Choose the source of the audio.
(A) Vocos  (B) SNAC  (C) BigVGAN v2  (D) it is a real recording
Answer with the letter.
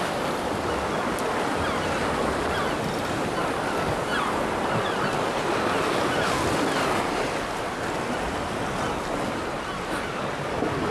D